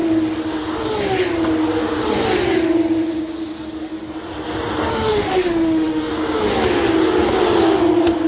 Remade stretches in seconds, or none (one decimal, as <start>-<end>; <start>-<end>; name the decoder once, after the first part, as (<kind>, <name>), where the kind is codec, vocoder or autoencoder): 4.9-6.1 (autoencoder, DAC-VAE)